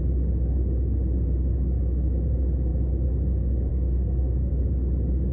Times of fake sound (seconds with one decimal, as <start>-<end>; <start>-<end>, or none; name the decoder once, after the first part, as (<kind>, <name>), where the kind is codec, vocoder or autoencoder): 3.7-4.5 (codec, SNAC)